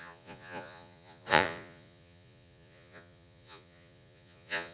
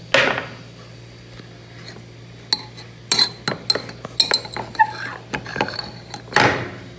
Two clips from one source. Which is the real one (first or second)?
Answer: second